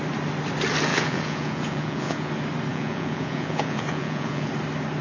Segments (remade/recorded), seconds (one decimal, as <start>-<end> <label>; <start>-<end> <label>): 0.0-0.9 recorded; 0.9-2.3 remade; 2.3-2.7 recorded; 2.7-4.5 remade; 4.5-5.0 recorded